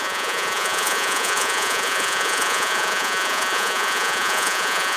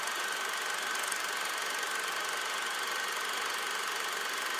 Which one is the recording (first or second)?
second